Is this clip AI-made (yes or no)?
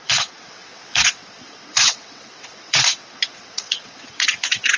yes